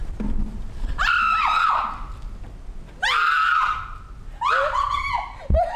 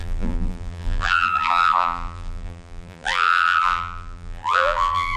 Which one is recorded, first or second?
first